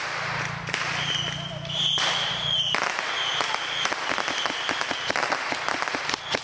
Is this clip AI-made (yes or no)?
no